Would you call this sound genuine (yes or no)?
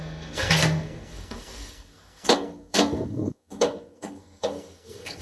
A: no